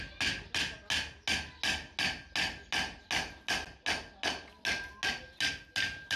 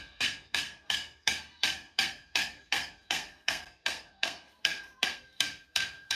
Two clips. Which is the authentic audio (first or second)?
first